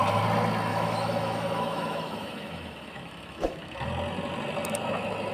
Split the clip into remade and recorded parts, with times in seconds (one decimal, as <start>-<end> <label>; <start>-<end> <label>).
0.0-0.7 recorded; 0.7-3.9 remade; 3.9-5.3 recorded